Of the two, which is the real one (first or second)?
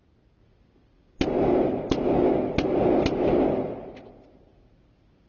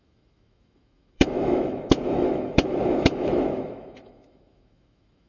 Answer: first